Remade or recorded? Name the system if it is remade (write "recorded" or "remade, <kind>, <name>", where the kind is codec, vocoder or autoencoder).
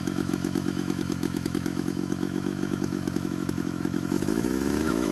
remade, autoencoder, DAC-VAE